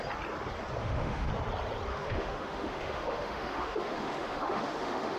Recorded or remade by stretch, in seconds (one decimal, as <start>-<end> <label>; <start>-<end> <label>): 0.0-0.8 recorded; 0.8-1.3 remade; 1.3-1.9 recorded; 1.9-5.2 remade